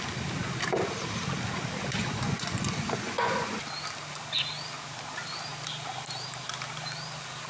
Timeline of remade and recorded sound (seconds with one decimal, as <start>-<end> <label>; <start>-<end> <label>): 0.0-2.0 recorded; 2.0-3.6 remade; 3.6-7.5 recorded